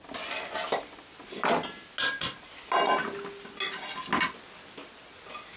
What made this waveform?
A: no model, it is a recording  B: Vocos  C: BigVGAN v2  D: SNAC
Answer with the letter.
A